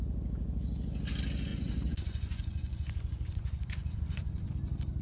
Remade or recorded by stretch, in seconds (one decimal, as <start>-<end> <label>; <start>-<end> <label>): 0.0-1.5 recorded; 1.5-4.5 remade; 4.5-5.0 recorded